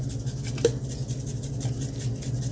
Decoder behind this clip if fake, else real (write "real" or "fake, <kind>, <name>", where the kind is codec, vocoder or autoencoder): real